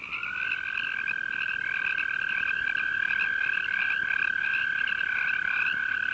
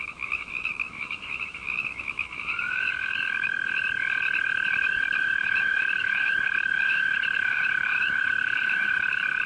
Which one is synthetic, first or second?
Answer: second